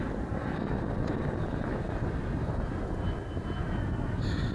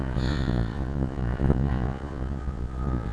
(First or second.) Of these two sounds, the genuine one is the first